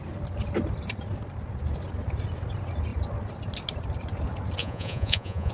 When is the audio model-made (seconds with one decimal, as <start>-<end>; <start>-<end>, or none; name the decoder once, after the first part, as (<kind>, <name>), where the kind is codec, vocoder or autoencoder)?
4.6-5.5 (vocoder, Vocos)